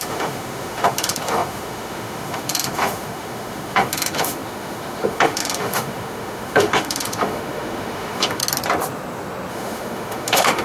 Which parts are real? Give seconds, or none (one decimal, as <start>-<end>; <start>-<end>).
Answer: 8.4-9.5